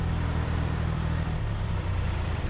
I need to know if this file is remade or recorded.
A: remade